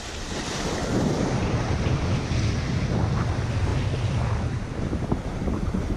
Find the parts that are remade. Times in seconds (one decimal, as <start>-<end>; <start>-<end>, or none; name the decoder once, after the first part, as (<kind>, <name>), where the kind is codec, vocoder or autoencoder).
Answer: none